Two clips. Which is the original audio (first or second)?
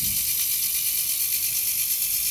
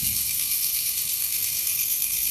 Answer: first